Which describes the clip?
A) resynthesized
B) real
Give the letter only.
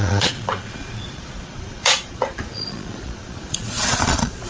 A